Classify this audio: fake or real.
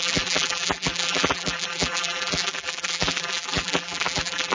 fake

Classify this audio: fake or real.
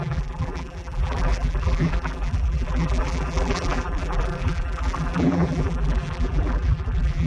fake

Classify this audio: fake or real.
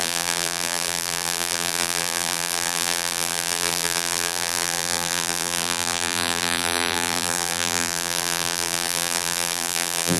fake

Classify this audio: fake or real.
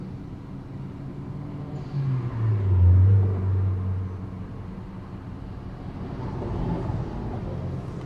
real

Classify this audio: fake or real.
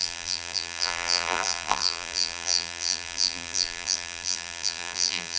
fake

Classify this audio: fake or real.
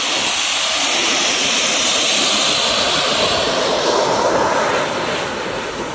real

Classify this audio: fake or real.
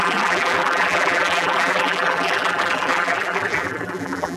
fake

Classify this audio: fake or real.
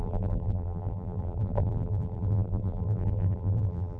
fake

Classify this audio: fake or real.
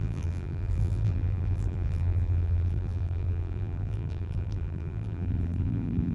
fake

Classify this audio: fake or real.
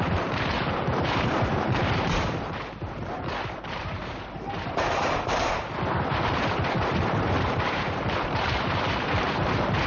fake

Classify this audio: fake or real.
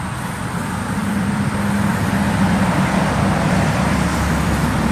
fake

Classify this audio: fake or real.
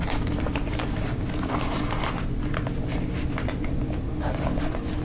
real